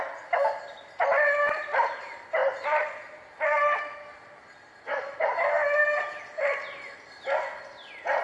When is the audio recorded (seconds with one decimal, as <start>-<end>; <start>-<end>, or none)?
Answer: 0.0-8.2